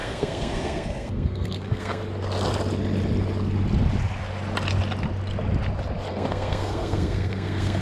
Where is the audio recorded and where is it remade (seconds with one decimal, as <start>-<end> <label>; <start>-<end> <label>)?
0.0-2.0 remade; 2.0-6.1 recorded; 6.1-7.8 remade

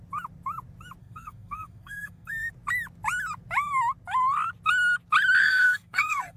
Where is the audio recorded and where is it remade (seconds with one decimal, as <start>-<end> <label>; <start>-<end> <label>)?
0.0-1.0 recorded; 1.0-2.5 remade; 2.5-5.4 recorded; 5.4-6.4 remade

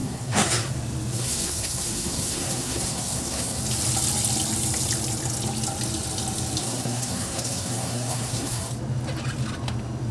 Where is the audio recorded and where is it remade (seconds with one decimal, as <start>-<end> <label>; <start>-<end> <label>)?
0.0-0.7 remade; 0.7-1.1 recorded; 1.1-3.6 remade; 3.6-6.6 recorded; 6.6-8.7 remade; 8.7-10.1 recorded

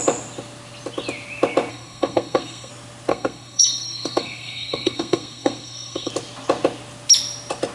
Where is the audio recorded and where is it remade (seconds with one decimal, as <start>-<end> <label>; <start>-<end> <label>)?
0.0-1.7 recorded; 1.7-2.7 remade; 2.7-3.1 recorded; 3.1-6.1 remade; 6.1-7.7 recorded

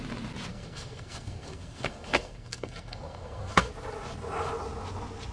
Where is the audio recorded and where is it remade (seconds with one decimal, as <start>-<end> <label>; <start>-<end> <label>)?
0.0-0.5 recorded; 0.5-3.7 remade; 3.7-5.3 recorded